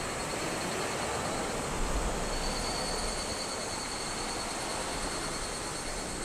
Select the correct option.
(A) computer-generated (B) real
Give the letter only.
B